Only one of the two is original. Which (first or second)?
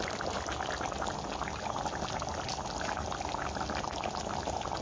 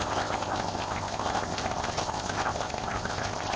first